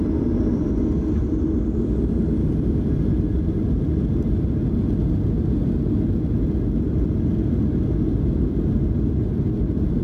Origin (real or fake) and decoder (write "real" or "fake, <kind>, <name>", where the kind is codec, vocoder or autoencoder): real